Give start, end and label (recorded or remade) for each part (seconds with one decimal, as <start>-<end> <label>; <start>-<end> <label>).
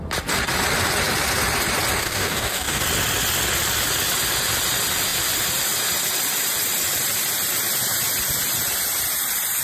0.0-2.0 recorded; 2.0-2.8 remade; 2.8-9.6 recorded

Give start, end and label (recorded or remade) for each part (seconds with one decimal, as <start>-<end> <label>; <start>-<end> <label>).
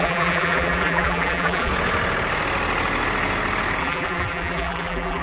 0.0-1.7 remade; 1.7-3.8 recorded; 3.8-5.2 remade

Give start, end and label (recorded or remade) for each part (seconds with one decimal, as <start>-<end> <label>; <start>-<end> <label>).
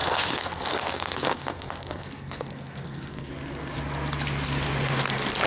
0.0-3.3 remade; 3.3-5.5 recorded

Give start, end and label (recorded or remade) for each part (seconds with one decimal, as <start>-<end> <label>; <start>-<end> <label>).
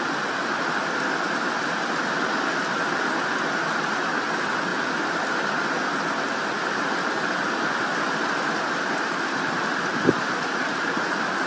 0.0-11.5 recorded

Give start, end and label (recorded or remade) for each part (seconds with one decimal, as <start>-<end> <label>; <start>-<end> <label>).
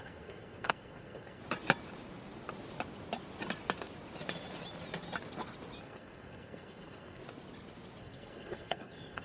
0.0-1.4 remade; 1.4-5.8 recorded; 5.8-7.2 remade; 7.2-8.0 recorded; 8.0-9.2 remade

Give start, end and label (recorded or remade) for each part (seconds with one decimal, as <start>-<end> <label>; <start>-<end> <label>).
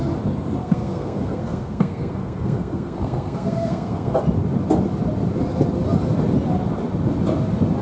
0.0-0.6 recorded; 0.6-4.2 remade; 4.2-7.8 recorded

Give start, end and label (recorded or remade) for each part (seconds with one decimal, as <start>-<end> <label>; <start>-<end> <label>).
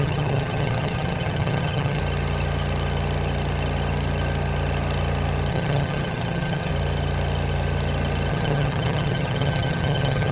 0.0-2.0 remade; 2.0-5.5 recorded; 5.5-6.7 remade; 6.7-8.3 recorded; 8.3-10.3 remade